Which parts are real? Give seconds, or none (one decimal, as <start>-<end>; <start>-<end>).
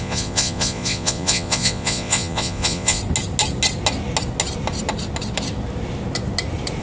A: 3.0-6.8